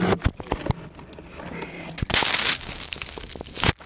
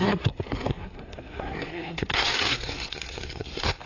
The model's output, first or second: second